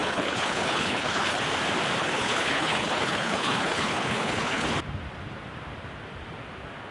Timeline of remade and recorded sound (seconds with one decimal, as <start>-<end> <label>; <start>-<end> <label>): 0.0-1.4 remade; 1.4-2.0 recorded; 2.0-4.7 remade; 4.7-6.9 recorded